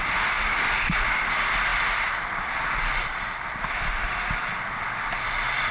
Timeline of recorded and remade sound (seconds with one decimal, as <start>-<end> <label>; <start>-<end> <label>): 0.0-5.7 recorded